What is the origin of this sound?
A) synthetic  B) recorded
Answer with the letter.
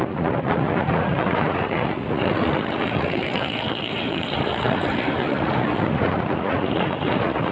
A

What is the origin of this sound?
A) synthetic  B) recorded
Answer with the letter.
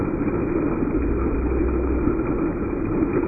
B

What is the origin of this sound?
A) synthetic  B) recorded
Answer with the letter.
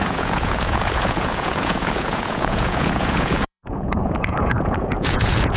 A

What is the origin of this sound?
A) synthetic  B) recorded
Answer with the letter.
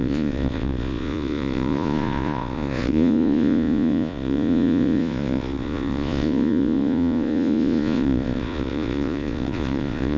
A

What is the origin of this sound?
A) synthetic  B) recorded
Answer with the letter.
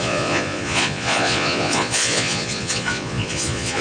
A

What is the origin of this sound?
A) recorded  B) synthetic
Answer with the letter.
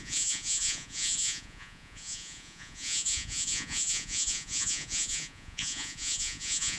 B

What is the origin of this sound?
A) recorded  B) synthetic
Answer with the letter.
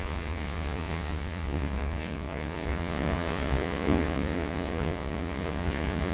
B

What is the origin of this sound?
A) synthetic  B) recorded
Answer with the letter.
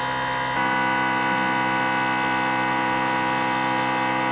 B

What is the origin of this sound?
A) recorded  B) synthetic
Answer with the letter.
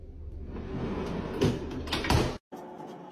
A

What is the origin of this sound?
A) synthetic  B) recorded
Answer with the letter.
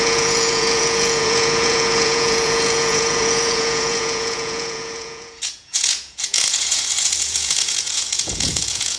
A